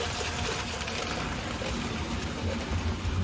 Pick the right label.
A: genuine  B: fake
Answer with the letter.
A